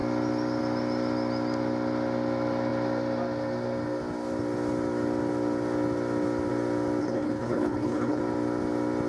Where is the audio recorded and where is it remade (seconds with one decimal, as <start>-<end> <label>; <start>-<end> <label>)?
0.0-7.0 recorded; 7.0-8.2 remade; 8.2-9.1 recorded